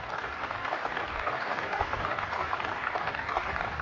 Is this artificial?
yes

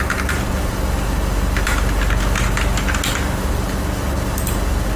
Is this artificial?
no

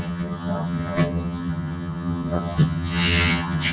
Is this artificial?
yes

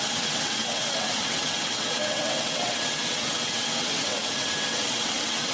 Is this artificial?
yes